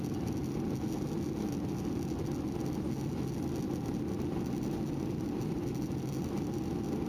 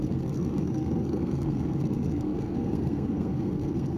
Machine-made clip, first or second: second